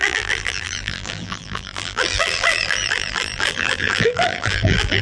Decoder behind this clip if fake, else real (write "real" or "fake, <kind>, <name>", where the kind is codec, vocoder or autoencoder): fake, vocoder, BigVGAN v2